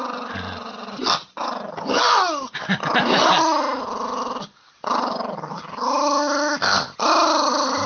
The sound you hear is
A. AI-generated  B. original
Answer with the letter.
B